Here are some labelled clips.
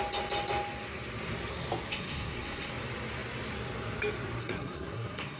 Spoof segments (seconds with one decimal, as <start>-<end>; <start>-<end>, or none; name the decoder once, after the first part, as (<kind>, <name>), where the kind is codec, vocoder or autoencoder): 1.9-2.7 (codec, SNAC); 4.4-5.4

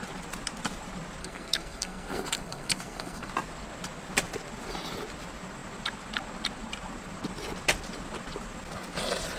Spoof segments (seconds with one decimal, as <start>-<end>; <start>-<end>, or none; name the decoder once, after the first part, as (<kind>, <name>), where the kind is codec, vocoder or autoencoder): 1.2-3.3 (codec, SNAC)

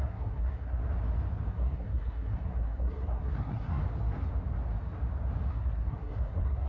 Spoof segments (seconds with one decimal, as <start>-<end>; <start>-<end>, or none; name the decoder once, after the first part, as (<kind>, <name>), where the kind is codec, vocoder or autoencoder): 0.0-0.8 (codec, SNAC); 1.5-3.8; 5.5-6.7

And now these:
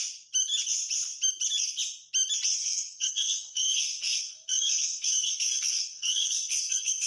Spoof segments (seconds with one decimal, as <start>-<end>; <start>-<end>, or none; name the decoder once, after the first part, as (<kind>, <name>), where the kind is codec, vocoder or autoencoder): 2.5-7.1 (codec, SNAC)

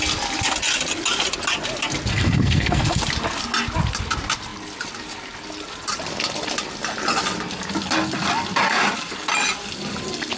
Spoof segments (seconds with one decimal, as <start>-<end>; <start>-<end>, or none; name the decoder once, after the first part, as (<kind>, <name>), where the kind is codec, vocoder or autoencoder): 2.1-3.0 (codec, SNAC)